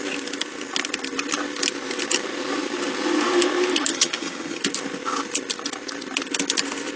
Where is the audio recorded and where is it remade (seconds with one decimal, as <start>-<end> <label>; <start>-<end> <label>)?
0.0-3.9 recorded; 3.9-4.6 remade; 4.6-7.0 recorded